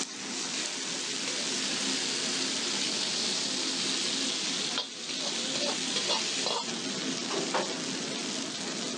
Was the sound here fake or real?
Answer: real